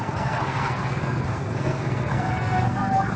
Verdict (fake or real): fake